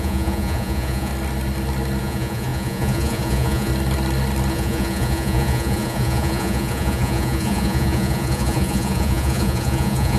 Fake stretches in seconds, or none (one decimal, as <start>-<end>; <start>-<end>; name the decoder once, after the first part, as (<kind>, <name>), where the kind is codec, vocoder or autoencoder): 0.0-1.1 (vocoder, Vocos); 2.0-3.7; 4.5-10.2